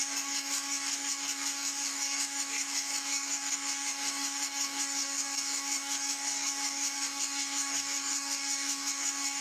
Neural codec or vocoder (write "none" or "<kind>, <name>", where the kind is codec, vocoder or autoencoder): codec, DAC